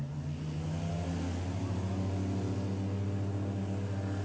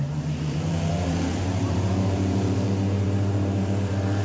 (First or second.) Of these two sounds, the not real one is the second